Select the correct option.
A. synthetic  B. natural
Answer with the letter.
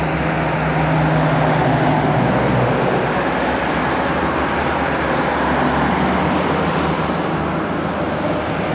B